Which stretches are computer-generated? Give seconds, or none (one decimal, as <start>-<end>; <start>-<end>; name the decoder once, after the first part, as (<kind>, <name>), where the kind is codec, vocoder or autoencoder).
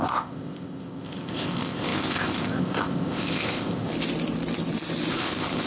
0.0-3.9 (codec, ZipCodec); 5.1-5.7